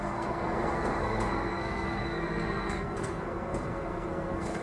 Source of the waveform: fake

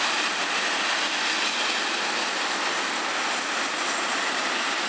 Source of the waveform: real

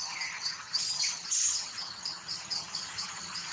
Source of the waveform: fake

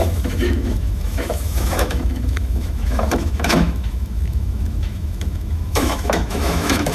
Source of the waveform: fake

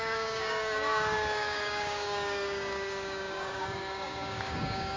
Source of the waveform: fake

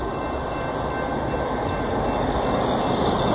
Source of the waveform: real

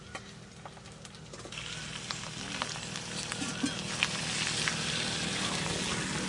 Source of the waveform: real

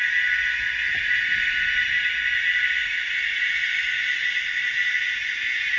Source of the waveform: real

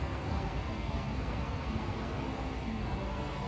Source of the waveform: fake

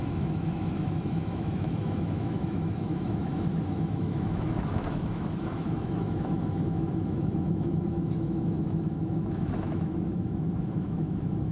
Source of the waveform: fake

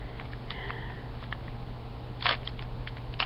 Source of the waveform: real